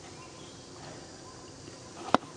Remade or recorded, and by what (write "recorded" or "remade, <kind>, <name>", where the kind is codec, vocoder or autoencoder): recorded